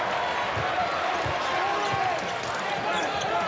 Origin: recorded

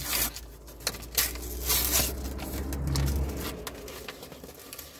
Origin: recorded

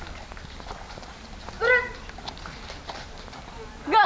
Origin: recorded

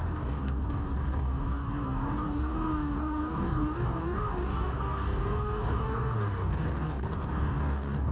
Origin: remade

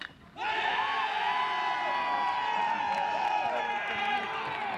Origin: recorded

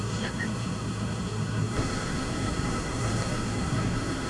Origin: remade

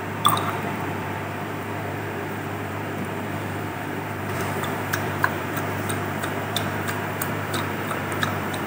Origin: remade